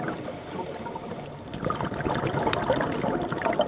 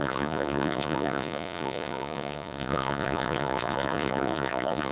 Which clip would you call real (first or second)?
first